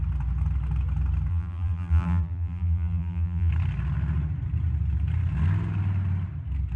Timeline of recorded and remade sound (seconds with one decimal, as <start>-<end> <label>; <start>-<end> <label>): 0.0-1.3 recorded; 1.3-3.5 remade; 3.5-6.8 recorded